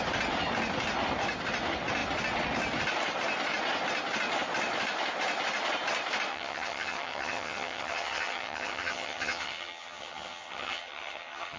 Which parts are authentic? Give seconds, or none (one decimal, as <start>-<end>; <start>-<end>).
0.0-6.3

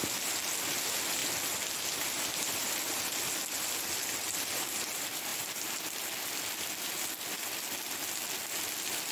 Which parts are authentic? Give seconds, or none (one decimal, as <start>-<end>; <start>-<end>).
0.0-9.1

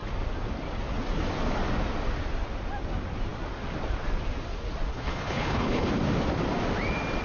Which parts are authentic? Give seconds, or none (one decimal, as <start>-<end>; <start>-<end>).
0.0-4.9; 5.9-7.2

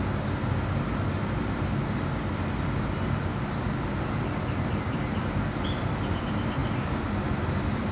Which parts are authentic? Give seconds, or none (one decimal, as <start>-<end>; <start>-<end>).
0.0-7.9

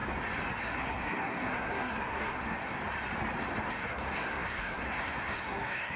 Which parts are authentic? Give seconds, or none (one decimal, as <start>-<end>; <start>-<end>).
0.0-0.6; 2.8-3.7